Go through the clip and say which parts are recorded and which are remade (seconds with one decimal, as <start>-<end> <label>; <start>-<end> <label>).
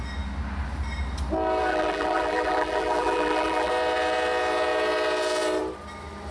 0.0-1.7 recorded; 1.7-3.7 remade; 3.7-6.3 recorded